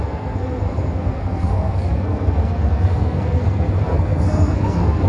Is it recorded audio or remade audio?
remade